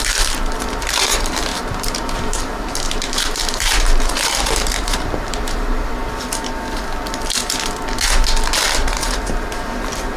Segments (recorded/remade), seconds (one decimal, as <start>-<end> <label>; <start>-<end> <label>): 0.0-5.9 remade; 5.9-8.8 recorded; 8.8-10.2 remade